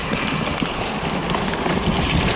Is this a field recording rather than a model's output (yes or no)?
yes